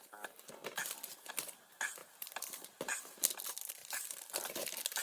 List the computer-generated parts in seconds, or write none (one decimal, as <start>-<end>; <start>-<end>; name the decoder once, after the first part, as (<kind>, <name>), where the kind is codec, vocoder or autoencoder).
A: none